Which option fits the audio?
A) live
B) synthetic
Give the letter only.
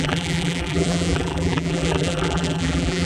B